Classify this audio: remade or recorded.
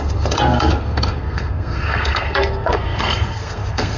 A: remade